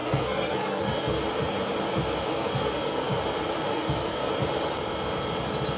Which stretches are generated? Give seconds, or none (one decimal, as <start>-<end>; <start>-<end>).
0.0-1.2; 2.3-3.2; 3.7-4.3